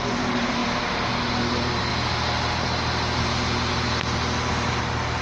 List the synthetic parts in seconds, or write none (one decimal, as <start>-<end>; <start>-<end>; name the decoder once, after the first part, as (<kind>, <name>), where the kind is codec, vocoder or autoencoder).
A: 0.0-0.6 (vocoder, BigVGAN v2); 1.5-1.9; 4.8-5.2